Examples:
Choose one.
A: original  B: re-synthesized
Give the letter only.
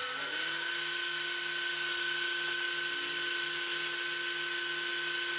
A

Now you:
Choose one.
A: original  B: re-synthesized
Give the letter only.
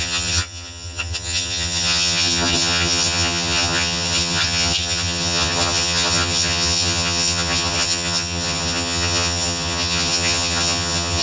B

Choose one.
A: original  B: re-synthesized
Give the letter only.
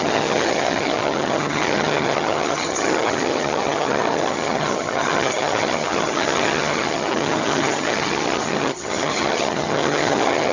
B